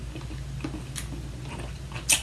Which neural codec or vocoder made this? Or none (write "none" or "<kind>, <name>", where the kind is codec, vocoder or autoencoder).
none